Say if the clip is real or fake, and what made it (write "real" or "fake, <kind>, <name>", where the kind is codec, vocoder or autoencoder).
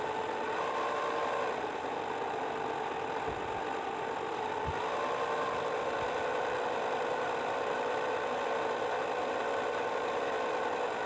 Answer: real